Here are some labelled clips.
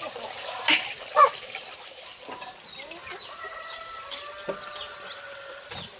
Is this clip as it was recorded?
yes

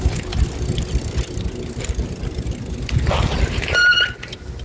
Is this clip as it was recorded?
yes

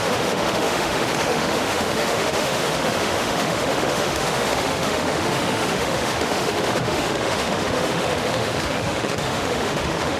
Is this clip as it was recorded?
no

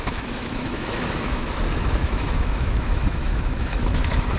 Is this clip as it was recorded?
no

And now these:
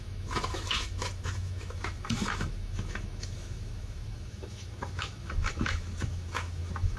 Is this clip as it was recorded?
no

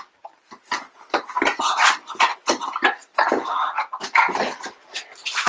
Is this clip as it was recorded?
yes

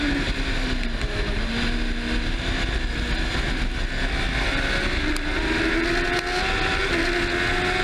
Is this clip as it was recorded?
yes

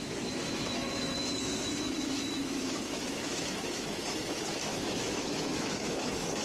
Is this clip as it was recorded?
no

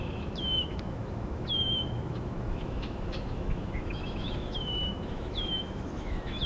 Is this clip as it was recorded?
no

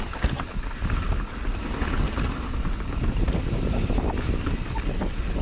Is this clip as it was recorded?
yes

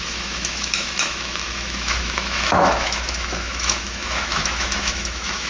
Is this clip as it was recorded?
no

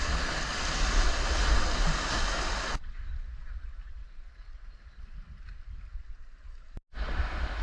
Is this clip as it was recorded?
yes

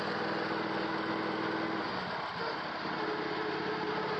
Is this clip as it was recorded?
yes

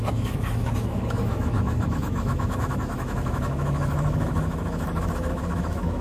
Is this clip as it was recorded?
no